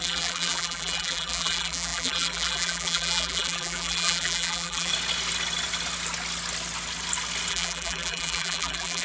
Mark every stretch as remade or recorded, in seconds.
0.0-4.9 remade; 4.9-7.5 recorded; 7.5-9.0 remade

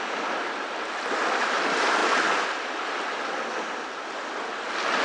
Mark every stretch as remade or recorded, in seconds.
0.0-5.0 recorded

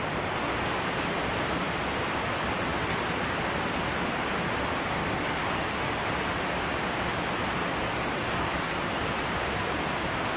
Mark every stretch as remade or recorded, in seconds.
0.0-5.0 recorded; 5.0-5.9 remade; 5.9-7.8 recorded; 7.8-9.0 remade; 9.0-10.4 recorded